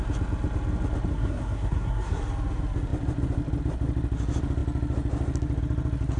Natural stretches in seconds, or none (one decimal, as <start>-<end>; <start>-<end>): 0.0-1.1; 2.2-6.2